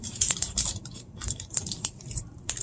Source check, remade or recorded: remade